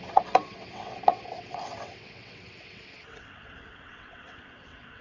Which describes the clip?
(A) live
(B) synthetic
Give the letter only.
B